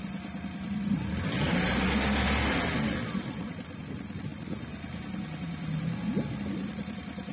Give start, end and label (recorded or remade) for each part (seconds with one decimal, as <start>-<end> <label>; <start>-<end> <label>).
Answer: 0.0-7.3 recorded